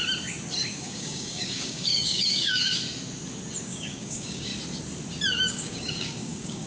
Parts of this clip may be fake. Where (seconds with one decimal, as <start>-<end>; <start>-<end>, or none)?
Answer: 0.7-2.8; 3.6-4.5; 5.3-6.7